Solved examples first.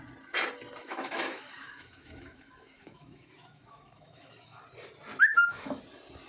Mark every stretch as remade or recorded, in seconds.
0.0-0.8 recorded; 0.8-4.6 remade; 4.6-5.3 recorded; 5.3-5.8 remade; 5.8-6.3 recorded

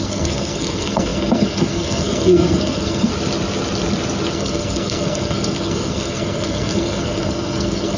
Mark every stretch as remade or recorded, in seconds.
0.0-3.1 remade; 3.1-4.3 recorded; 4.3-8.0 remade

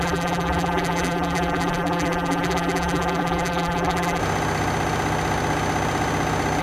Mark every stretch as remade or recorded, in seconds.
0.0-4.2 remade; 4.2-6.6 recorded

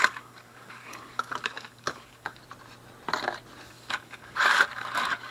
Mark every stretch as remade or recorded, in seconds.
0.0-2.4 remade; 2.4-3.7 recorded; 3.7-5.3 remade

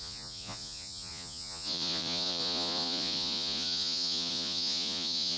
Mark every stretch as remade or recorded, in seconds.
0.0-5.4 remade

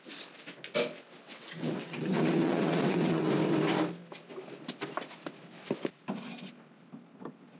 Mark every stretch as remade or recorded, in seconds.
0.0-1.2 recorded; 1.2-3.3 remade; 3.3-7.6 recorded